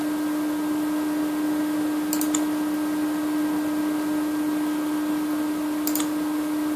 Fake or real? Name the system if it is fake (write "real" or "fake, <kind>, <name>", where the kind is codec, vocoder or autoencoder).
real